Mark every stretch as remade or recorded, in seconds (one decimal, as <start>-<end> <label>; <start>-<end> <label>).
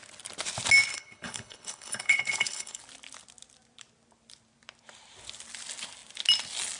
0.0-0.9 recorded; 0.9-2.8 remade; 2.8-6.8 recorded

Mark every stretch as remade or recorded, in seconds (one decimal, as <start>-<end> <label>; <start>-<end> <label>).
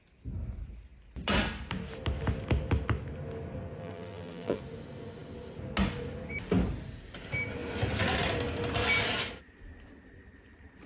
0.0-3.8 recorded; 3.8-4.6 remade; 4.6-10.9 recorded